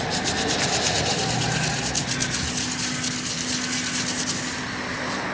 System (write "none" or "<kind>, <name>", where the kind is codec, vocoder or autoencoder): none